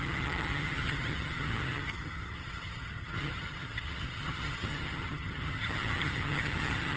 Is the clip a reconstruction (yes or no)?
yes